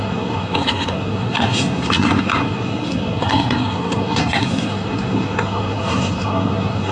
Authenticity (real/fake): fake